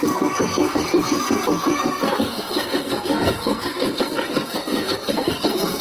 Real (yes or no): no